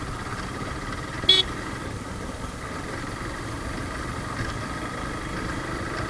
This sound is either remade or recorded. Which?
recorded